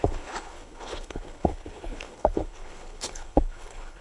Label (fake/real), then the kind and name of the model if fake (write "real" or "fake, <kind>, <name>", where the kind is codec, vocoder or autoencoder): fake, codec, HILCodec